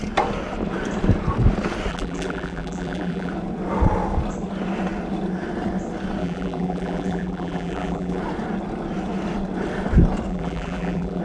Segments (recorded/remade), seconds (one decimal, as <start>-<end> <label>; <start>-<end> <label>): 0.0-1.9 recorded; 1.9-3.3 remade; 3.3-6.2 recorded; 6.2-8.2 remade; 8.2-10.3 recorded; 10.3-11.2 remade